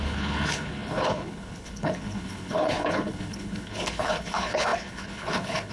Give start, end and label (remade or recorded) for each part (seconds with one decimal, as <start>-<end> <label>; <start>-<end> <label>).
0.0-5.7 remade